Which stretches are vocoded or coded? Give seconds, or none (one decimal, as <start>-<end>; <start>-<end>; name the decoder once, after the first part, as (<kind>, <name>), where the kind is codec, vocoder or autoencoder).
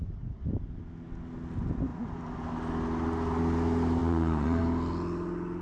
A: 4.0-4.6 (vocoder, Vocos)